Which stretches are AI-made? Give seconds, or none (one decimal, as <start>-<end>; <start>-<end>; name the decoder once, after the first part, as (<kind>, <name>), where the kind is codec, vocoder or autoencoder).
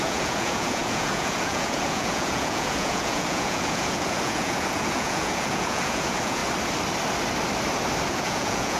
0.0-6.4 (vocoder, Vocos); 8.1-8.8